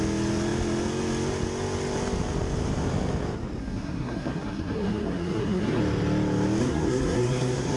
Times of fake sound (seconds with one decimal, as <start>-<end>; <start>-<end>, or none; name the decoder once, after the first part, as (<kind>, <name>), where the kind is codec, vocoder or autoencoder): 3.6-5.8 (codec, SNAC); 6.6-7.8